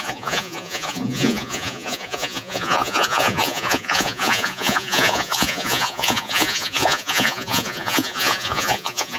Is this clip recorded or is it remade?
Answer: remade